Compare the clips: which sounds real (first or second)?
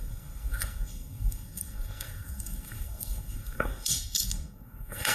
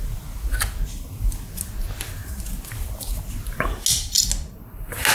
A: second